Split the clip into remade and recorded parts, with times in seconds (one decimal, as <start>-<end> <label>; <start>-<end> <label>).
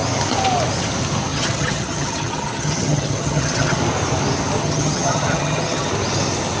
0.0-1.3 recorded; 1.3-3.8 remade; 3.8-4.6 recorded; 4.6-5.9 remade; 5.9-6.6 recorded